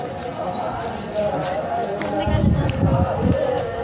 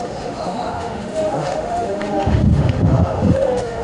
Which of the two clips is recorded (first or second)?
first